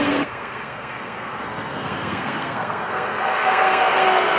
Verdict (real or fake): fake